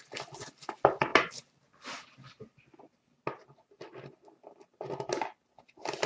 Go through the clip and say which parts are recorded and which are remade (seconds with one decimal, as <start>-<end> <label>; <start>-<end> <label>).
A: 0.0-6.1 recorded